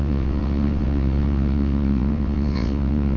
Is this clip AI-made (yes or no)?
yes